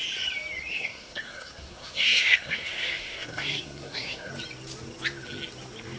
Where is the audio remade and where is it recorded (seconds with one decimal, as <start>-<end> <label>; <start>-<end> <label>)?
0.0-0.7 recorded; 0.7-4.3 remade; 4.3-6.0 recorded